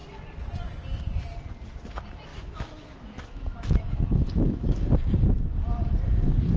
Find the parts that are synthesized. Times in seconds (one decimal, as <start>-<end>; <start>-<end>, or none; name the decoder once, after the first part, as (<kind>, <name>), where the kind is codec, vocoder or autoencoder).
2.3-4.8 (autoencoder, DAC-VAE)